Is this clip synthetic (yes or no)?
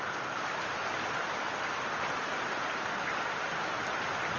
no